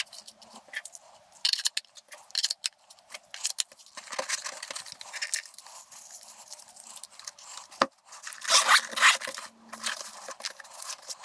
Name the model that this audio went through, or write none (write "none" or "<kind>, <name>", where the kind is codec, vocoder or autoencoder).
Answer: none